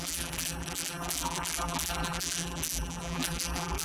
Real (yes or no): no